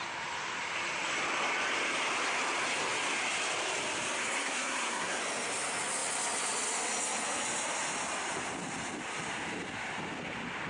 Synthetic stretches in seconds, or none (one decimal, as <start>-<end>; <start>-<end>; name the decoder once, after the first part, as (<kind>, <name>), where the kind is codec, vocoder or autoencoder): 4.2-5.2 (codec, SNAC)